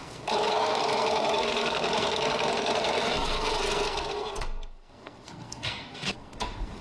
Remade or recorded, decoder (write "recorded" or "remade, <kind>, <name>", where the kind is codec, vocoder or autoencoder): remade, codec, SNAC